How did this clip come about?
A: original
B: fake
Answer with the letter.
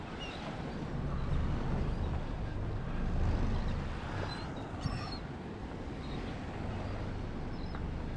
A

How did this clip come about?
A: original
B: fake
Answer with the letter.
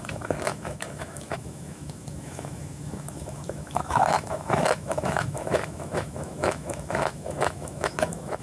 B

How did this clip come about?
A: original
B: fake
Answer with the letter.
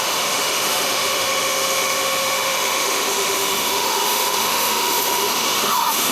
B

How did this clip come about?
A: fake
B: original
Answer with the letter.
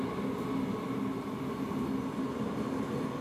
B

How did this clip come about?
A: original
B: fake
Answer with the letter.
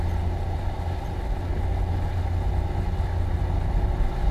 A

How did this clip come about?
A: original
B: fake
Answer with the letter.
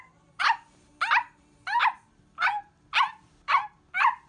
A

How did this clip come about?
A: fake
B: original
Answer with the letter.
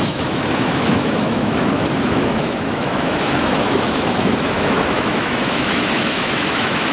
A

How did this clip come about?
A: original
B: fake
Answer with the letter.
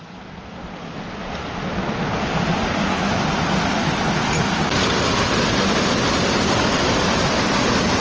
A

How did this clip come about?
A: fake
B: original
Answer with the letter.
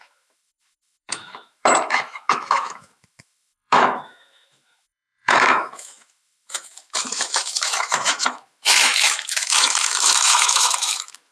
A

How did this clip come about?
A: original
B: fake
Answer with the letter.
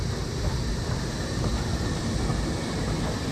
A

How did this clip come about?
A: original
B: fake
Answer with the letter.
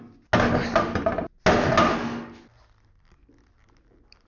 A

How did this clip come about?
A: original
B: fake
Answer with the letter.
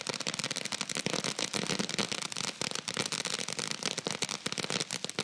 A